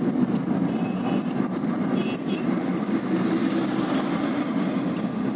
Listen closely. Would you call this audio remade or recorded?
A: recorded